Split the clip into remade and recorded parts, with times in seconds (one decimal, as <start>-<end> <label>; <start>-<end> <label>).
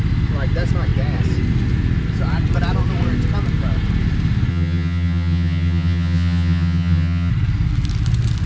0.0-4.5 recorded; 4.5-7.3 remade; 7.3-8.5 recorded